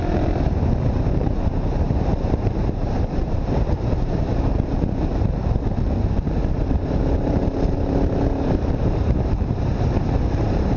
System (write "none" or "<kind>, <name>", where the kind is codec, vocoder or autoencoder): vocoder, BigVGAN v2